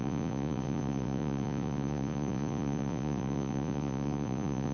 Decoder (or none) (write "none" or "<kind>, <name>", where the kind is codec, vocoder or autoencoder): vocoder, Vocos